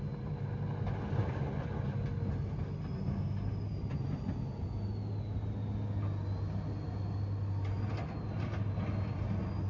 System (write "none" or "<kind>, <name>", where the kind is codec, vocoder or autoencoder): none